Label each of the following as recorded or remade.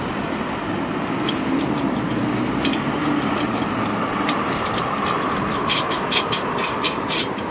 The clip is remade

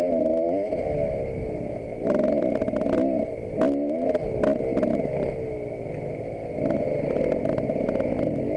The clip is recorded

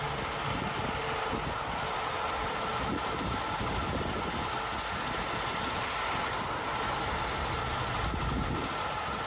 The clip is recorded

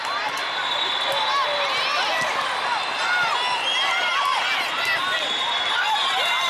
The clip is recorded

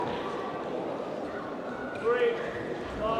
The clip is recorded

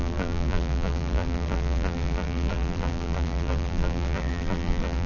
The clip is remade